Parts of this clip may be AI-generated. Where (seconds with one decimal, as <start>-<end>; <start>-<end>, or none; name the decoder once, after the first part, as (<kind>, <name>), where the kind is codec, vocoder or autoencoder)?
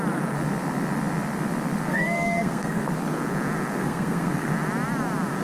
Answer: 1.9-2.8 (codec, SNAC); 3.8-4.5